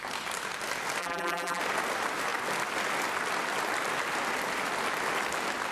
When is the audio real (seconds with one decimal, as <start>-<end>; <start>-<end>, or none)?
0.0-1.0; 1.6-5.7